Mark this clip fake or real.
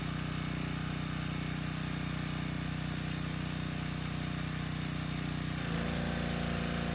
real